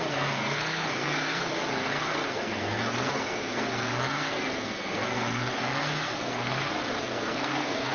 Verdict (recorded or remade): remade